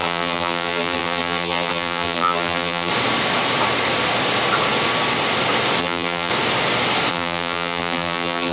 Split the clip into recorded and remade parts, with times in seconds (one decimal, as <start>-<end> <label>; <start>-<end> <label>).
0.0-2.9 remade; 2.9-5.8 recorded; 5.8-6.3 remade; 6.3-7.1 recorded; 7.1-8.5 remade